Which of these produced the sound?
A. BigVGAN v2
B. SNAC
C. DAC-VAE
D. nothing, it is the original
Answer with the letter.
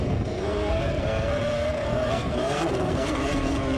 B